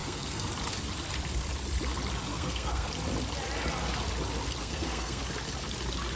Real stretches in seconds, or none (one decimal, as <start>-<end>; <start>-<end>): 0.5-2.3; 2.9-4.6; 5.2-6.2